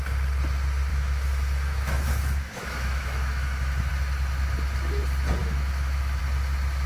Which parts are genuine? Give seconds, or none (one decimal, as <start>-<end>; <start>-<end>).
0.0-0.9; 3.9-5.4; 6.2-6.9